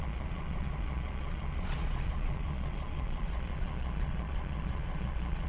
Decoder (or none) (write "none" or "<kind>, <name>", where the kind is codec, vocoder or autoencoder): vocoder, Vocos